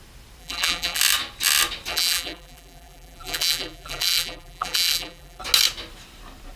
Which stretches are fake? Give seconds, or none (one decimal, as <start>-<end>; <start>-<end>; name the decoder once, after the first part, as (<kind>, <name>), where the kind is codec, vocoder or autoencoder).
0.4-1.0 (vocoder, BigVGAN v2); 1.9-5.4